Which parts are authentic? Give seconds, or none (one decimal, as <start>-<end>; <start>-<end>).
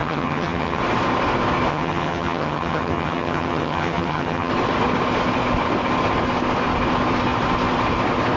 0.8-1.7; 4.5-8.4